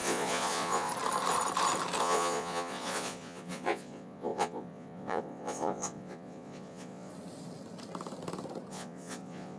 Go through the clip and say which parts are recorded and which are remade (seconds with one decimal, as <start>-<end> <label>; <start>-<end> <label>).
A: 0.0-0.9 remade; 0.9-2.0 recorded; 2.0-7.1 remade; 7.1-8.7 recorded; 8.7-9.6 remade